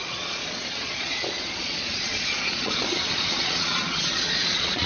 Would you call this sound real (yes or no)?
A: no